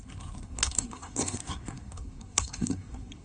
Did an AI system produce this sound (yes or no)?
yes